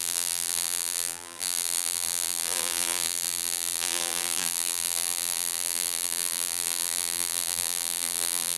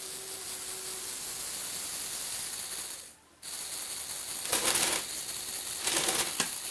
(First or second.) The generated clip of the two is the first